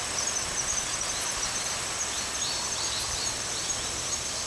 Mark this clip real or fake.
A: real